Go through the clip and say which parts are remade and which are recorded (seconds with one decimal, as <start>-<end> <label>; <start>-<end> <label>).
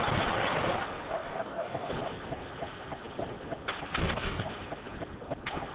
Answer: 0.0-1.2 recorded; 1.2-1.9 remade; 1.9-4.0 recorded; 4.0-4.5 remade; 4.5-5.7 recorded